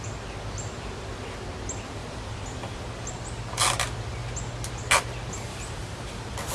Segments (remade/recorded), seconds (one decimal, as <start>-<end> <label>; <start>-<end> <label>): 0.0-2.0 recorded; 2.0-3.1 remade; 3.1-5.5 recorded; 5.5-6.5 remade